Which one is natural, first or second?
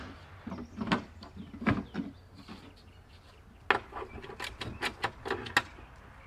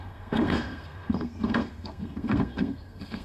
first